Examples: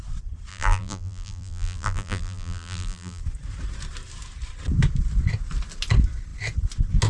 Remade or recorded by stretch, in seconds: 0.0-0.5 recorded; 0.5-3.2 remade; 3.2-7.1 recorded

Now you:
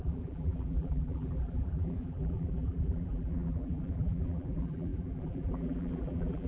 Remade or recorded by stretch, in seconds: 0.0-6.5 remade

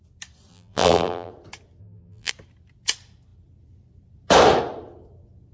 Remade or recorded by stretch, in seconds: 0.0-0.5 recorded; 0.5-1.3 remade; 1.3-1.8 recorded; 1.8-2.3 remade; 2.3-5.5 recorded